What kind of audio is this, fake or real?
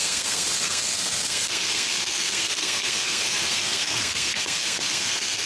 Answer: fake